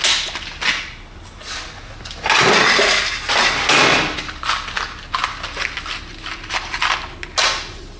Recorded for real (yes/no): yes